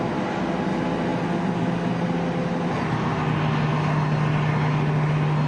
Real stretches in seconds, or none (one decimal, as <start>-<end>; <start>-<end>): 0.0-5.5